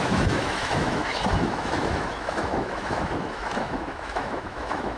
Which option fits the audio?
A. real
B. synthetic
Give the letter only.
B